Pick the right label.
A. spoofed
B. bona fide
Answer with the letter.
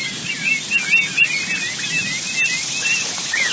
B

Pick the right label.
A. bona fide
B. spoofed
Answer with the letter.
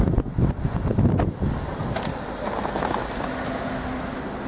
A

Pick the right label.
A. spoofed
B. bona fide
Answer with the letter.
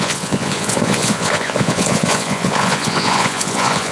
A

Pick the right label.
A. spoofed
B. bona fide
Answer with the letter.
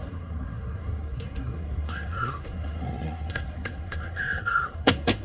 A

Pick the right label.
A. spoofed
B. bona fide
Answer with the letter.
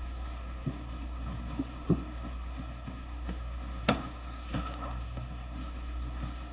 A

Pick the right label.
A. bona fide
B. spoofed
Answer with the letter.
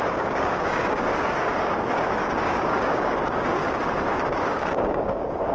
B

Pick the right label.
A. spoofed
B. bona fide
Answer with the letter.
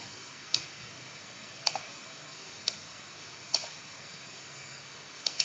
A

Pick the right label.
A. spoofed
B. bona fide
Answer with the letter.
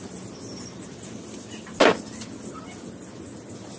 B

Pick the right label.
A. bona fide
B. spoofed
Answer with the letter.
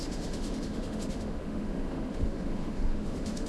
B